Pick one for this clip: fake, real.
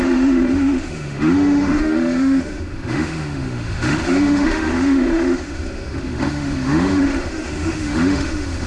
fake